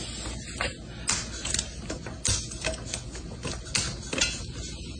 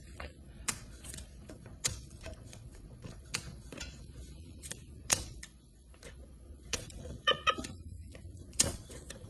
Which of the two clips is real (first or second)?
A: first